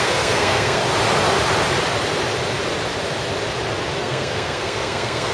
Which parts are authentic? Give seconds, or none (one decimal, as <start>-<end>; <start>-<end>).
0.8-4.0